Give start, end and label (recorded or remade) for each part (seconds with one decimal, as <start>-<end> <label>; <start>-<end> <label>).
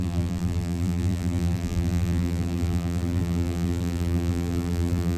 0.0-5.2 remade